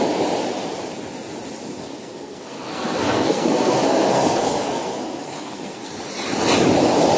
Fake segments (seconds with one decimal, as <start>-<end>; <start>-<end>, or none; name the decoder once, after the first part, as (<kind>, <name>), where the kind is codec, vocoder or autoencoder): 1.8-5.9 (codec, SNAC)